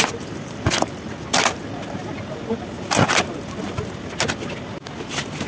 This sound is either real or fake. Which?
real